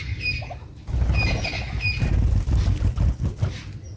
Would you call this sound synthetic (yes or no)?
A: no